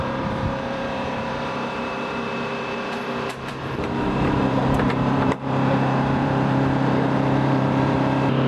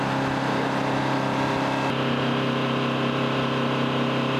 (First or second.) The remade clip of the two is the first